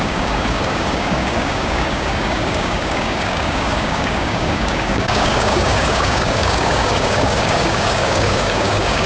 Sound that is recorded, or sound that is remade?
remade